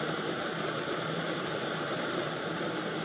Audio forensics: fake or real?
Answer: fake